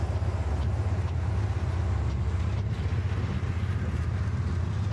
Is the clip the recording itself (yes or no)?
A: yes